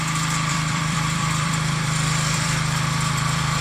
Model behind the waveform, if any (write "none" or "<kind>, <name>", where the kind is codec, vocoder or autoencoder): vocoder, BigVGAN v2